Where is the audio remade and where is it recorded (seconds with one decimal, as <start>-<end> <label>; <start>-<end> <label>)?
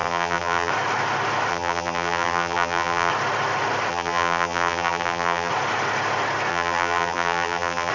0.0-0.7 remade; 0.7-1.5 recorded; 1.5-3.1 remade; 3.1-3.9 recorded; 3.9-5.5 remade; 5.5-6.5 recorded; 6.5-7.9 remade